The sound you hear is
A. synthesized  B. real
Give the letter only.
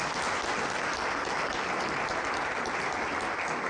B